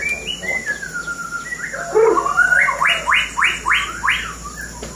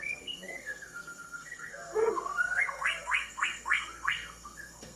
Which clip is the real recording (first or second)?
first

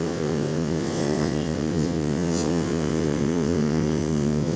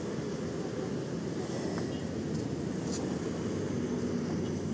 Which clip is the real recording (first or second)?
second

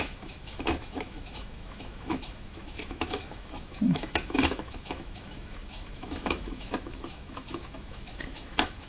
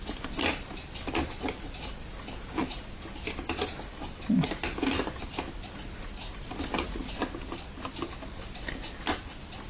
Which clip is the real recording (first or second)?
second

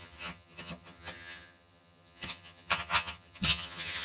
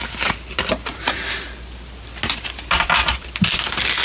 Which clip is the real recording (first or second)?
second